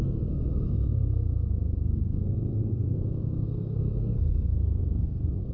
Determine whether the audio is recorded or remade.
remade